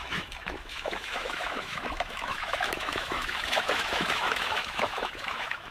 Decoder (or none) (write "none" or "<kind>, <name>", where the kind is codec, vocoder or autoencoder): autoencoder, DAC-VAE